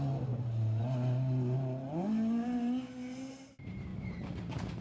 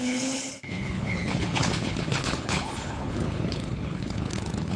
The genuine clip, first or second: first